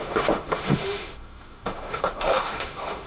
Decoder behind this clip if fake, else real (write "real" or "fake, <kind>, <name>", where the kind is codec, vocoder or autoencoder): fake, autoencoder, DAC-VAE